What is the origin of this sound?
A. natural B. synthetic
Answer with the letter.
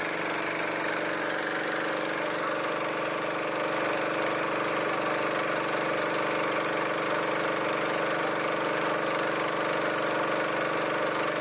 A